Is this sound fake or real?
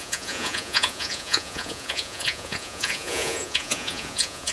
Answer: fake